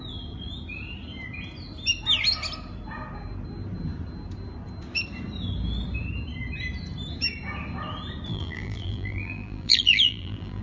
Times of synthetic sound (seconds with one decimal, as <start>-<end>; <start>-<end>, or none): 8.3-10.6